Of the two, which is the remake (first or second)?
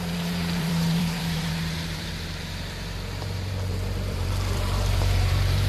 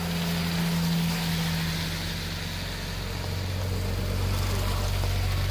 first